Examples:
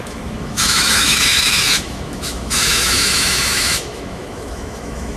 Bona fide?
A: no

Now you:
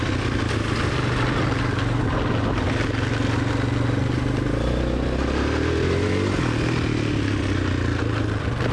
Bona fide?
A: yes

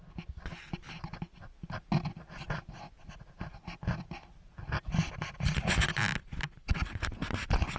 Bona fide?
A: yes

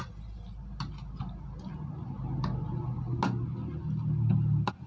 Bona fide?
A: yes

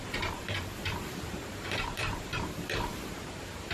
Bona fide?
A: no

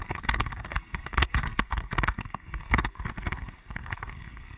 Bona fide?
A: no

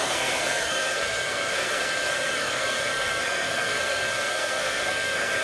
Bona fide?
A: no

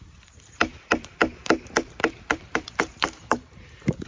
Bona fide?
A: no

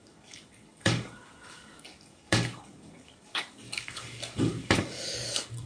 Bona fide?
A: no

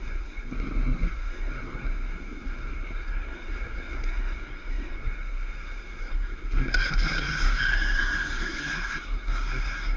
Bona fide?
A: no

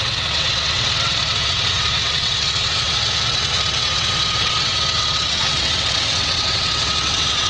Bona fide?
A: no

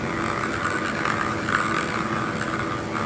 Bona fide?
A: yes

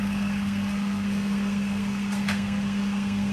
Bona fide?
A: no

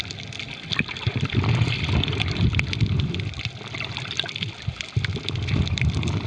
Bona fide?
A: yes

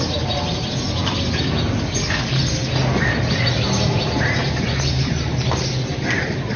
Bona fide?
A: yes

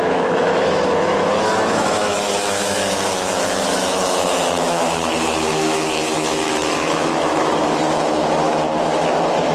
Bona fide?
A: no